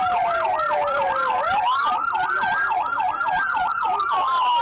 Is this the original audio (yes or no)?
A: no